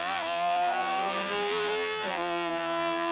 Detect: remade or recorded remade